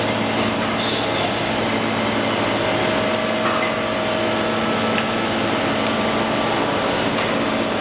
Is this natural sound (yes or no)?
yes